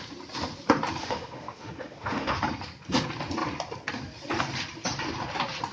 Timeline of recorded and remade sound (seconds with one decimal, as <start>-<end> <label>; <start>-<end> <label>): 0.0-1.0 recorded; 1.0-2.4 remade; 2.4-5.7 recorded